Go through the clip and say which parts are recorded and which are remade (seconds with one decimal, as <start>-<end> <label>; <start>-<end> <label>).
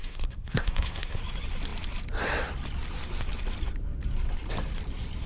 0.0-1.2 remade; 1.2-5.3 recorded